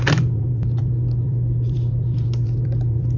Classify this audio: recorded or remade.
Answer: remade